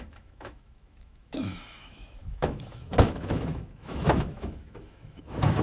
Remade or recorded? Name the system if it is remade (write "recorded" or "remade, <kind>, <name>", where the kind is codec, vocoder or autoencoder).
remade, autoencoder, DAC-VAE